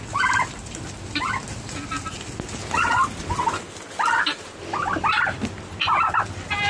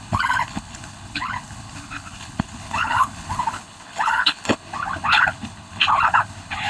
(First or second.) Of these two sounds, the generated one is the second